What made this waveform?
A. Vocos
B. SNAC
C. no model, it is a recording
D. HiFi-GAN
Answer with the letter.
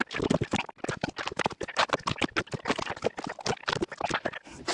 C